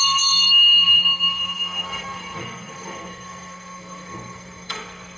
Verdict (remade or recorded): remade